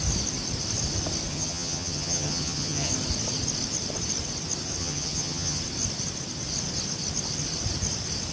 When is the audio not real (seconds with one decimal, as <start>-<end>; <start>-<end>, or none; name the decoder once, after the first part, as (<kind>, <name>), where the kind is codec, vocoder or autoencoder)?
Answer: 1.3-2.9 (vocoder, HiFi-GAN); 4.8-5.6